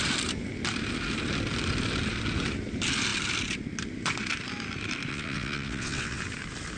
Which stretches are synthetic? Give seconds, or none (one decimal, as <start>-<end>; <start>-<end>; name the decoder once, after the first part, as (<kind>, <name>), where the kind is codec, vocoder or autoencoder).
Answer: 5.1-6.2 (vocoder, WaveNeXt)

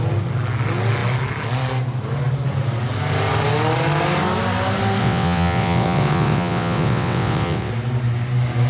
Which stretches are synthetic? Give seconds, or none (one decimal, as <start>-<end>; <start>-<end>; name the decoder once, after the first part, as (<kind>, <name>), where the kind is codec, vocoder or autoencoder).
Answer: 5.0-7.7 (vocoder, WaveNeXt)

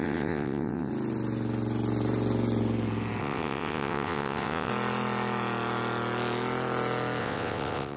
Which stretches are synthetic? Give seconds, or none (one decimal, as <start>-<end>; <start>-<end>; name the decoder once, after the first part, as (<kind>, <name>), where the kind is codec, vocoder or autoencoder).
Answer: 0.0-0.9 (vocoder, WaveNeXt); 3.2-4.7; 7.2-8.0

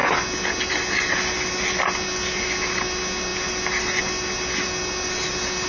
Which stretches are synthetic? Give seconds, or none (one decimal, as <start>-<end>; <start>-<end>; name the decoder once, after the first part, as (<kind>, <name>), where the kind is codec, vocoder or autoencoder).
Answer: none

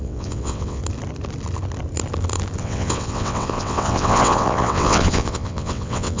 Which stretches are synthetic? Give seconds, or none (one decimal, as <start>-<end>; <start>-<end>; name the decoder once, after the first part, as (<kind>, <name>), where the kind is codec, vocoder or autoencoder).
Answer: 0.0-0.8 (vocoder, WaveNeXt); 2.6-6.2